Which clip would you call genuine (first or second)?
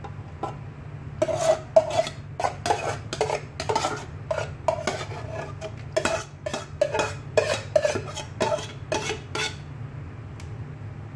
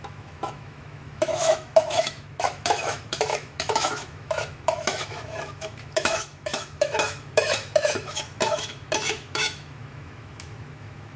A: first